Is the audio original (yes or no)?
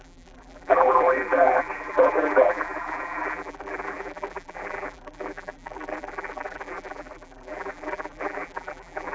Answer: no